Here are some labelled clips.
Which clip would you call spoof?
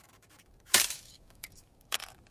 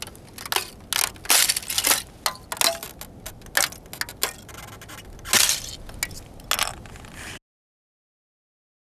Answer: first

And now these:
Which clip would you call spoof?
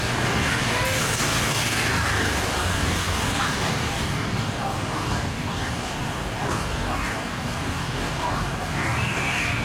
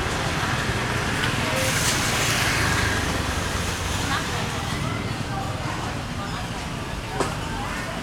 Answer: first